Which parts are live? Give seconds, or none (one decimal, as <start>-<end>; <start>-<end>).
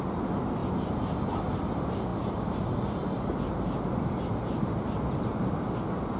0.0-6.2